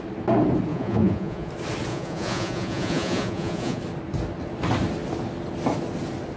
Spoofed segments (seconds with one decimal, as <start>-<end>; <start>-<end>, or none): 0.7-1.5; 1.9-3.8